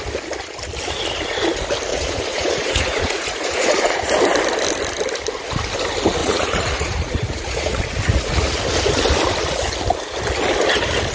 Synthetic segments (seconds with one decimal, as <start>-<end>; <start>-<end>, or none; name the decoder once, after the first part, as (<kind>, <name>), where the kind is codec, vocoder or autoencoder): 1.9-4.1 (vocoder, Vocos); 6.2-8.6